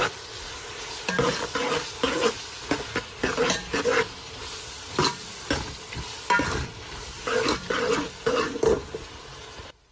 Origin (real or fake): real